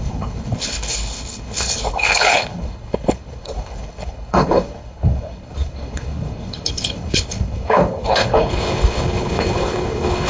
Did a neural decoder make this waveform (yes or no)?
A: yes